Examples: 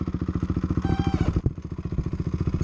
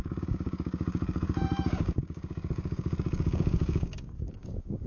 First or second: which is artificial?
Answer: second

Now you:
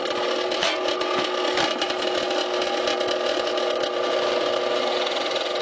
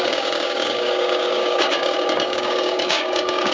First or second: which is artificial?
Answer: second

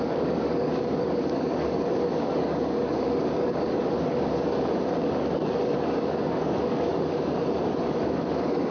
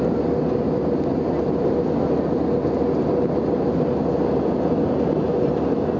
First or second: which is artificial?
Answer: first